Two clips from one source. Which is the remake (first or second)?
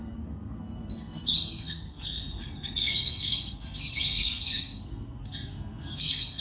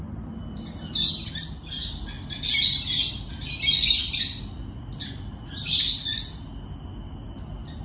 first